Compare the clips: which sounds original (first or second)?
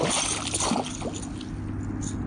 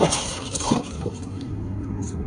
first